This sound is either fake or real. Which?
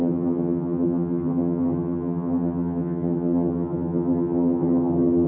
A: fake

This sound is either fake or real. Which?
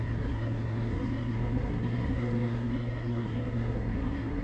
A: fake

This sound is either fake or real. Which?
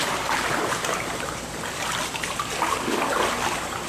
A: fake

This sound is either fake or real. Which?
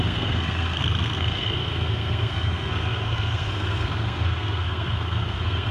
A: fake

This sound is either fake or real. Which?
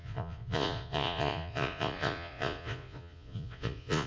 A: fake